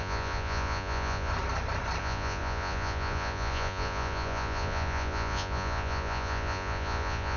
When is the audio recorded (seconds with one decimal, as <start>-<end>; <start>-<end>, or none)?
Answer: 1.3-2.0

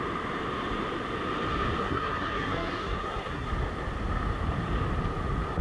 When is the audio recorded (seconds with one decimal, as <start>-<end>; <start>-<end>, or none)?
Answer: 0.0-1.8; 3.5-5.6

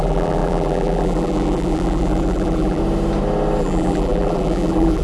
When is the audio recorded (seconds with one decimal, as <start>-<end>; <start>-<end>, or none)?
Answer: 2.8-3.6

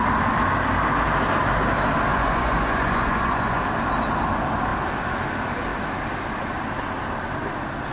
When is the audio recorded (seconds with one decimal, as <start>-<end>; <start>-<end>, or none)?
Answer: 0.0-2.1; 3.6-7.9

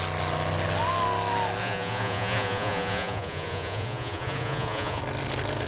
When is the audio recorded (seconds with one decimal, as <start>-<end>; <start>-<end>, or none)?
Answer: 0.0-1.6; 5.0-5.7

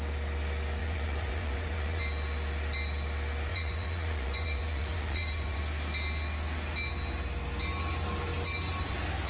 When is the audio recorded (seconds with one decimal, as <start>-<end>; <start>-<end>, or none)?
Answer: 0.0-0.8; 2.0-3.5; 5.6-9.3

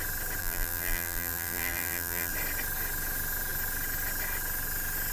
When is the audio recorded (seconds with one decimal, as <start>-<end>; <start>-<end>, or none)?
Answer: 0.0-0.4; 2.3-5.1

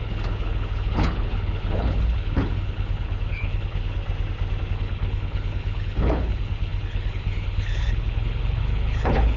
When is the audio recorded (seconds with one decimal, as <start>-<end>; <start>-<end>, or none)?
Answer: 4.0-4.7